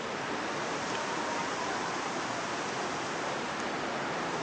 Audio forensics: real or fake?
real